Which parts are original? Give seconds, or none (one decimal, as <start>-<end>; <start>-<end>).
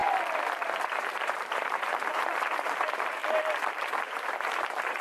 0.0-0.8; 3.2-4.0